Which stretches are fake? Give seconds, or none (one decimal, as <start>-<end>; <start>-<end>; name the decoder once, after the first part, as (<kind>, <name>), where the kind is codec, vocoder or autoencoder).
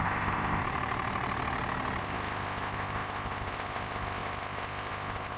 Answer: 0.0-0.6 (codec, ZipCodec); 2.0-5.4